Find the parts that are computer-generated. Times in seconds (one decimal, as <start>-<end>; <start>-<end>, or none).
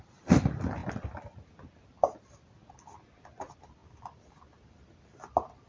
none